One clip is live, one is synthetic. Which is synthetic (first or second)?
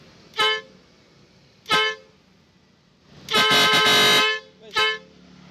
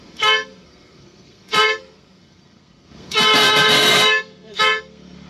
second